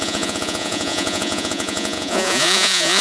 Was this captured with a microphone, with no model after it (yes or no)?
no